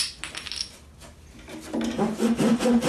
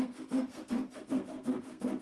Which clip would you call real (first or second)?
first